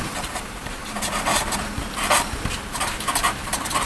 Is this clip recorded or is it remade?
remade